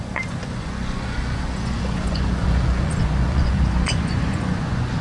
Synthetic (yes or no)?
yes